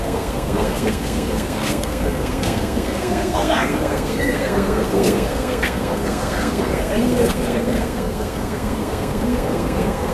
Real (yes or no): no